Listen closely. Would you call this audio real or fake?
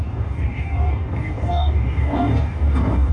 fake